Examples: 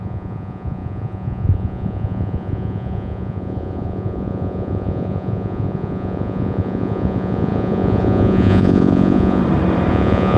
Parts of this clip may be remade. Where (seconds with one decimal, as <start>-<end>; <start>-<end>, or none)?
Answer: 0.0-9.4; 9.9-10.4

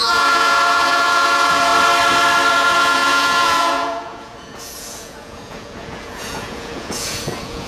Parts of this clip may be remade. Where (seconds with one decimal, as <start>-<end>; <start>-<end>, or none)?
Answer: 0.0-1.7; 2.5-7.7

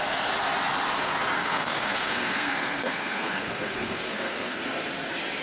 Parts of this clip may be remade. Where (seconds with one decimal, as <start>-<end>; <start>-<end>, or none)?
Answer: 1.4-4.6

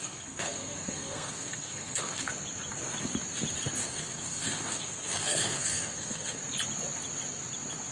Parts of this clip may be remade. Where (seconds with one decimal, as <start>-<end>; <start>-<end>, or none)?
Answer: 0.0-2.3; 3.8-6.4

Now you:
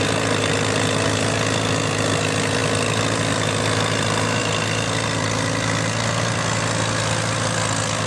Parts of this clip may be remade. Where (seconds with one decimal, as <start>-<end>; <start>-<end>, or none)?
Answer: none

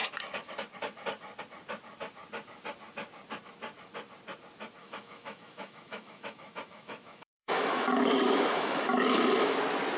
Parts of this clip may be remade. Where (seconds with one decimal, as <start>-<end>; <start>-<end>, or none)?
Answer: 4.8-9.6